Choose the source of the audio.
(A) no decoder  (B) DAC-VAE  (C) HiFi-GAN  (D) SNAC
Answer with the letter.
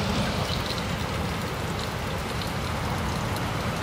A